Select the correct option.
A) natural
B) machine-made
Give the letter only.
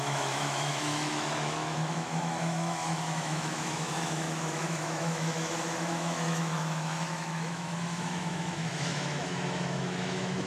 B